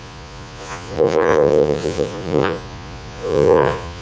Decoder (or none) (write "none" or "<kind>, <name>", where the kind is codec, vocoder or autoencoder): vocoder, Vocos